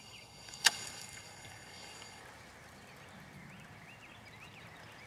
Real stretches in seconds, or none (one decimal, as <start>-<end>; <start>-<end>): 2.2-5.1